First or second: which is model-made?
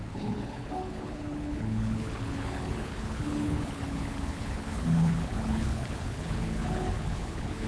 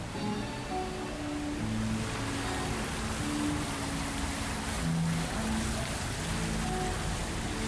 first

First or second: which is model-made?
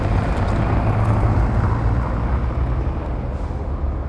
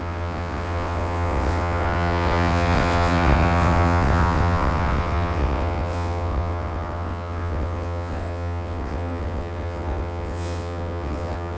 second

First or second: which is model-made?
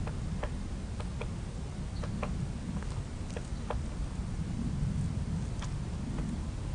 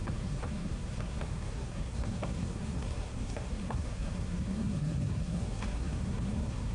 second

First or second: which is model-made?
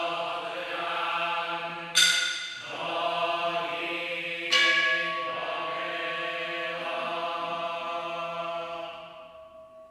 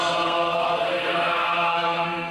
second